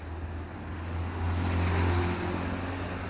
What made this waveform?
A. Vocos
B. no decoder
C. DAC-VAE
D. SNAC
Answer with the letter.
B